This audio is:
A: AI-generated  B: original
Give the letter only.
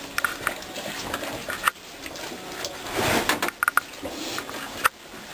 B